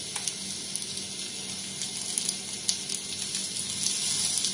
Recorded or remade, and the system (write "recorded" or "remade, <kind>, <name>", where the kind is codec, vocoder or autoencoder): recorded